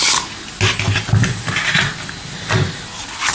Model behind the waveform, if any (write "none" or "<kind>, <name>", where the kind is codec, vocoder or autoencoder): none